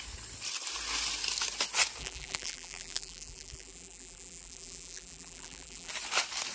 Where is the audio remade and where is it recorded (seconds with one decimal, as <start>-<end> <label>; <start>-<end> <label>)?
0.0-2.0 recorded; 2.0-5.9 remade; 5.9-6.5 recorded